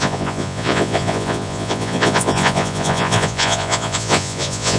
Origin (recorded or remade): remade